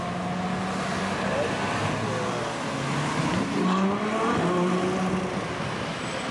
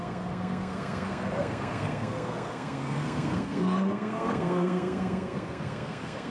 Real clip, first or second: first